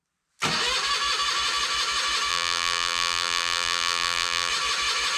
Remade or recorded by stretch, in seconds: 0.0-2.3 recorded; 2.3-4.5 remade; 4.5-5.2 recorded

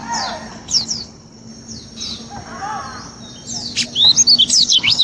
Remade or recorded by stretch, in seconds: 0.0-0.5 recorded; 0.5-1.5 remade; 1.5-4.5 recorded; 4.5-5.0 remade

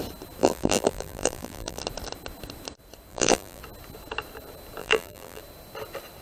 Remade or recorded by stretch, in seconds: 0.0-0.4 recorded; 0.4-1.8 remade; 1.8-3.1 recorded; 3.1-3.6 remade; 3.6-4.8 recorded; 4.8-5.4 remade; 5.4-6.2 recorded

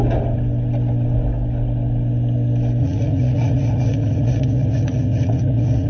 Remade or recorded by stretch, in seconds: 0.0-2.8 recorded; 2.8-5.9 remade

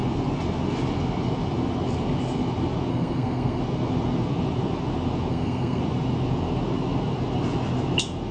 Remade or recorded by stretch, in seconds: 0.0-2.9 recorded; 2.9-3.6 remade; 3.6-5.3 recorded; 5.3-5.8 remade; 5.8-8.3 recorded

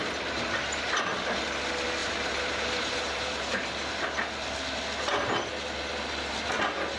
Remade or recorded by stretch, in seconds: 0.0-2.0 recorded; 2.0-4.0 remade; 4.0-7.0 recorded

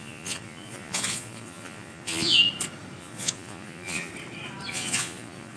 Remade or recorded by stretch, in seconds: 0.0-2.5 remade; 2.5-3.0 recorded; 3.0-4.1 remade; 4.1-4.7 recorded; 4.7-5.6 remade

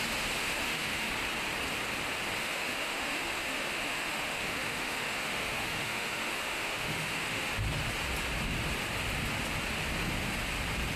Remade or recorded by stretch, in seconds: 0.0-0.4 recorded; 0.4-1.1 remade; 1.1-2.4 recorded; 2.4-7.5 remade; 7.5-11.0 recorded